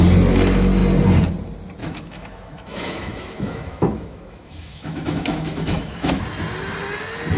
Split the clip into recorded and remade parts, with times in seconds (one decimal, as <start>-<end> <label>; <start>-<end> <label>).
0.0-1.8 recorded; 1.8-6.2 remade; 6.2-7.4 recorded